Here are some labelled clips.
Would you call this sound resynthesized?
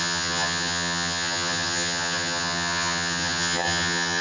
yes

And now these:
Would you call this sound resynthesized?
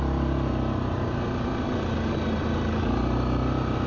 no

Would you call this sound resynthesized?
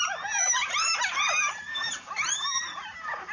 no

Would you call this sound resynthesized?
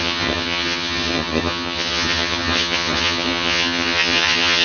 yes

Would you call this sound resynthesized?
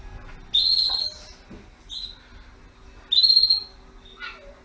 no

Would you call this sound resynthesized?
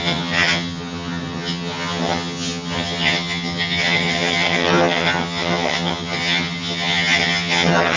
yes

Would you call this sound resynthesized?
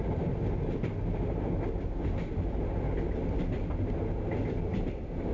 no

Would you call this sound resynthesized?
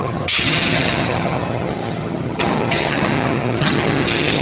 yes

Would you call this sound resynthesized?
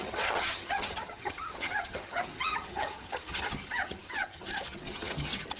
yes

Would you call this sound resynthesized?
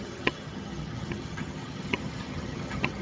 yes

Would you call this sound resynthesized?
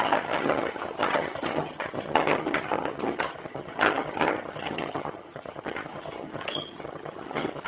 yes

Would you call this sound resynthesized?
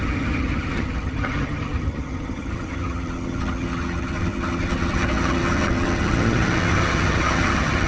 yes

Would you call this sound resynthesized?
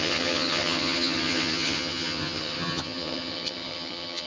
yes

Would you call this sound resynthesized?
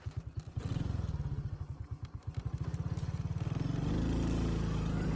no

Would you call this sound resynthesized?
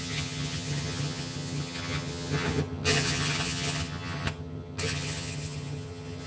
yes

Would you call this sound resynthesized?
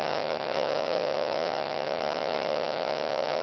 yes